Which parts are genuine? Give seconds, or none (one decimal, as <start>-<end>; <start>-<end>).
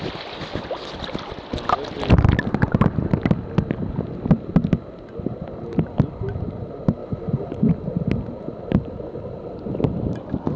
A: 0.0-7.0; 7.7-10.6